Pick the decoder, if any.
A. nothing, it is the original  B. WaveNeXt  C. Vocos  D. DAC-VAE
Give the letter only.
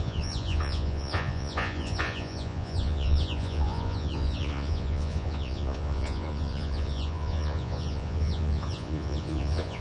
C